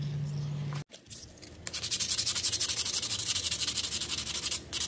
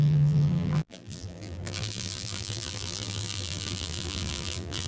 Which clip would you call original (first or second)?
first